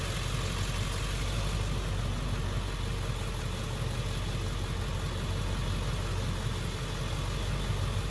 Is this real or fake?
real